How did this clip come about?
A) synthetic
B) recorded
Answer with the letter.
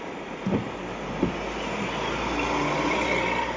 B